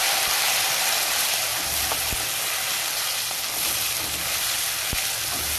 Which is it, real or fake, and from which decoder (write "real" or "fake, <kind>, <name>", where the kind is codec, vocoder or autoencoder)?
real